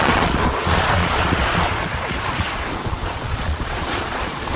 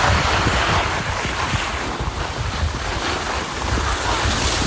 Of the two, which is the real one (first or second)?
second